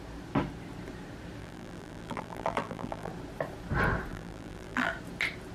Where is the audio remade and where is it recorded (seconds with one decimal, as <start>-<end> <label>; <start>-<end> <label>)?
0.0-1.4 recorded; 1.4-3.1 remade; 3.1-4.1 recorded; 4.1-4.9 remade; 4.9-5.5 recorded